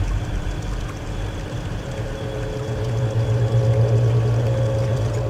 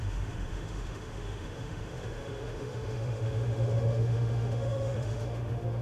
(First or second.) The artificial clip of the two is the second